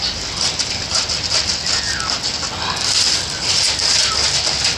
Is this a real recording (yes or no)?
yes